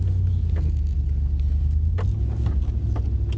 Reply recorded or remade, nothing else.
recorded